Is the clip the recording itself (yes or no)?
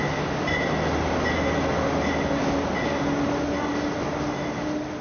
yes